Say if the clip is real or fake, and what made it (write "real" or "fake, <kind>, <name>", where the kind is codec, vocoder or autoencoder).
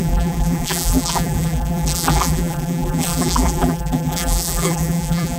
fake, vocoder, BigVGAN v2